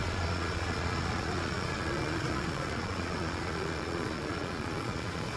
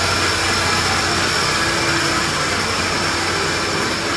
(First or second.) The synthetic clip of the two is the first